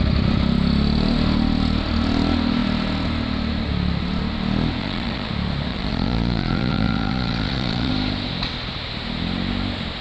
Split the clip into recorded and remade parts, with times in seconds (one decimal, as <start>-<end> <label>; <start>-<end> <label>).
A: 0.0-4.8 recorded; 4.8-5.3 remade; 5.3-5.7 recorded; 5.7-7.9 remade; 7.9-10.0 recorded